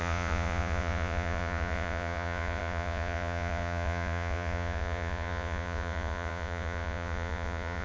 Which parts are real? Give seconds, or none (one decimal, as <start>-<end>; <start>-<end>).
none